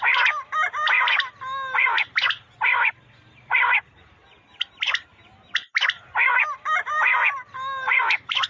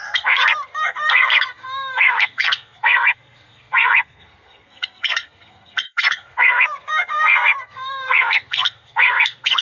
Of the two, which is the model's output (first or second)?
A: second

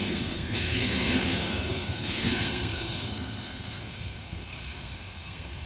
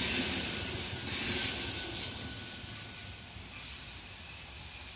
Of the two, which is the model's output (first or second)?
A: first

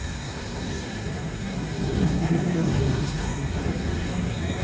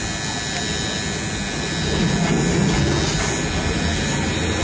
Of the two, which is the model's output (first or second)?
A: first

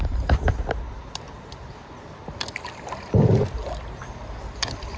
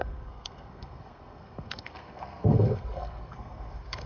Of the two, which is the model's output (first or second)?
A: second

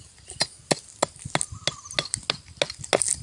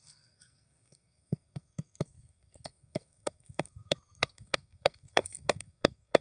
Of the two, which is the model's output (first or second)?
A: second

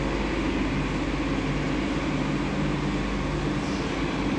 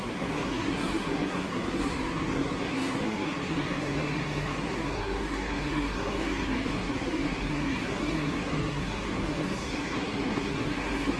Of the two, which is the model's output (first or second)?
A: second